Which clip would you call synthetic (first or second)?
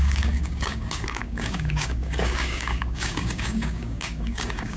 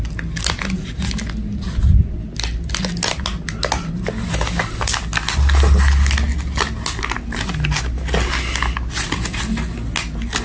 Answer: first